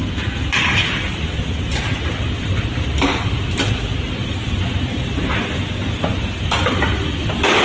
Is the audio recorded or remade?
recorded